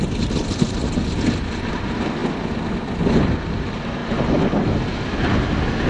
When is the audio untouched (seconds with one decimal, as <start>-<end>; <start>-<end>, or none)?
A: 1.0-1.7; 2.2-3.6; 4.0-5.9